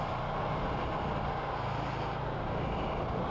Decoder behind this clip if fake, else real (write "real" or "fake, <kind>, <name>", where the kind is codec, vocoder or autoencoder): real